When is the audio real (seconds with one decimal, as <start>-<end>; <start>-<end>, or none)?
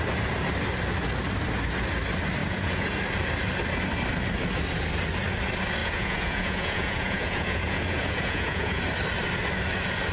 0.0-2.4; 3.0-5.8; 8.8-10.1